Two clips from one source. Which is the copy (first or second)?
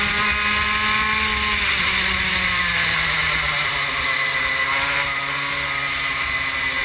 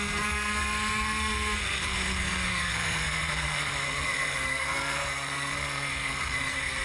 second